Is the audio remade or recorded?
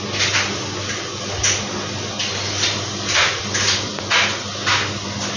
recorded